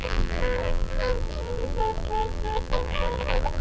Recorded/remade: remade